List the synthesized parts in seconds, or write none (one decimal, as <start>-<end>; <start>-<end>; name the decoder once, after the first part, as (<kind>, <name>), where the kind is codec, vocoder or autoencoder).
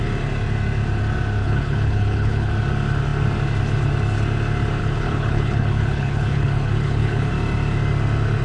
1.4-2.5 (codec, HILCodec); 4.8-7.3